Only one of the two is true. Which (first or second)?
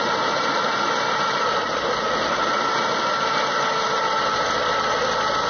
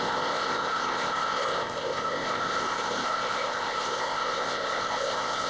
first